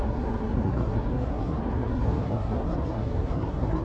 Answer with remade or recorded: remade